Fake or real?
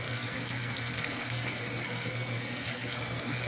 fake